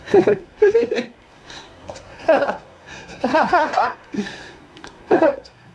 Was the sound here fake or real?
fake